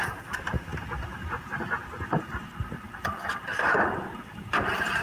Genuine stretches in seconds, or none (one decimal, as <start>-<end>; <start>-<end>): none